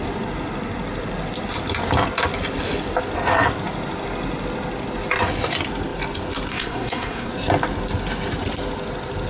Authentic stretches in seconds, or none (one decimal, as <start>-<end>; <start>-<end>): 0.0-6.5; 7.3-9.3